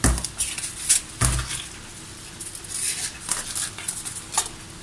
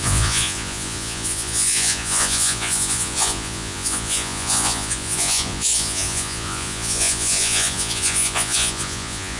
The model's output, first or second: second